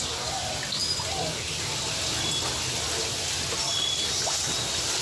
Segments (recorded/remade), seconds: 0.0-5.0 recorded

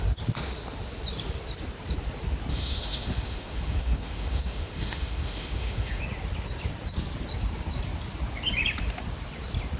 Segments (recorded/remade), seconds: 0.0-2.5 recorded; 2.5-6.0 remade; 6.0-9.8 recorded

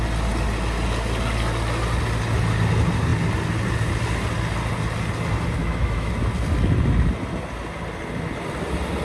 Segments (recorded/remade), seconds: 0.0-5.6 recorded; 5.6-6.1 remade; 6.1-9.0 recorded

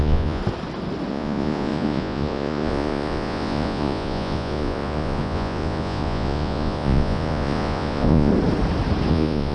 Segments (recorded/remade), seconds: 0.0-0.4 remade; 0.4-1.1 recorded; 1.1-8.3 remade; 8.3-9.1 recorded; 9.1-9.5 remade

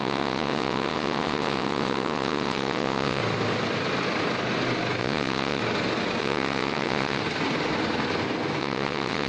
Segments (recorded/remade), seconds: 0.0-3.2 remade; 3.2-5.0 recorded; 5.0-5.6 remade; 5.6-6.2 recorded; 6.2-7.2 remade; 7.2-8.6 recorded; 8.6-9.3 remade